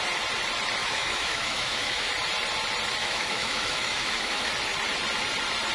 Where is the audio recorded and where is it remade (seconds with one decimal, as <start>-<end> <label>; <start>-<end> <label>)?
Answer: 0.0-0.8 recorded; 0.8-2.1 remade; 2.1-3.0 recorded; 3.0-4.5 remade; 4.5-5.7 recorded